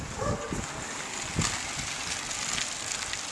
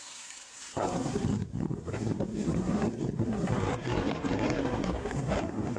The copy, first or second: second